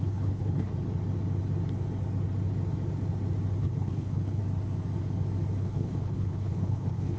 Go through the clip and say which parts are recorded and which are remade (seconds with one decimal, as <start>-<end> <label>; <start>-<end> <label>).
0.0-0.7 remade; 0.7-3.6 recorded; 3.6-4.4 remade; 4.4-5.6 recorded; 5.6-7.2 remade